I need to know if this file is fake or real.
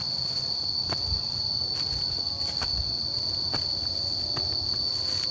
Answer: real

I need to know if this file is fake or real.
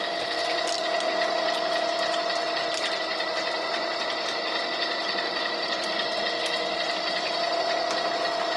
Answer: real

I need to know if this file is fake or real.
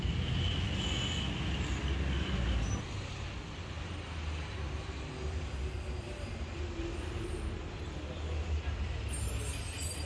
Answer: real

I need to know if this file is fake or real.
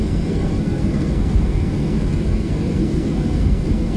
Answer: fake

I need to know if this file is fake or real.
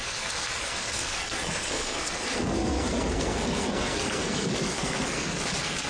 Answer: fake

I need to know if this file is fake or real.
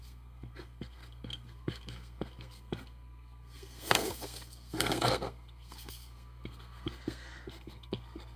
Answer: fake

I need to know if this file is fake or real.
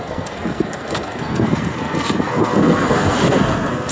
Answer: fake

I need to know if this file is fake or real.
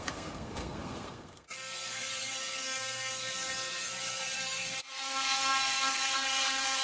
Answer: fake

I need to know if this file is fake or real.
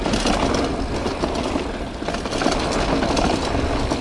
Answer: real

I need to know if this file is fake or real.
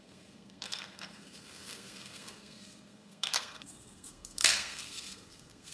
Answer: fake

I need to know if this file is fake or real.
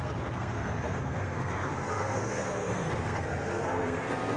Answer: fake